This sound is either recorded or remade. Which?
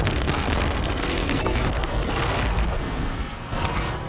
remade